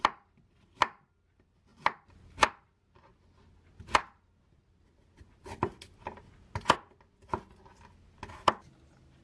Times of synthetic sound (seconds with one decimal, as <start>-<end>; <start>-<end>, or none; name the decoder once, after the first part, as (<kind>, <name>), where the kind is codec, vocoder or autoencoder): none